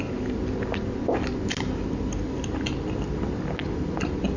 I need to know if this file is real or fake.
real